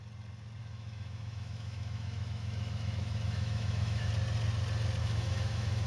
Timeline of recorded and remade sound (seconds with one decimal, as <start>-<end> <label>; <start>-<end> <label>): 0.0-0.6 recorded; 0.6-4.1 remade; 4.1-5.0 recorded; 5.0-5.9 remade